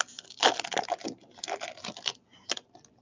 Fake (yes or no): no